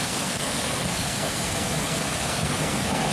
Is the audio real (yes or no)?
no